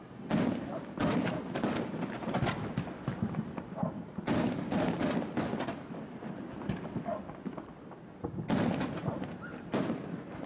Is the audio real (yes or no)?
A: yes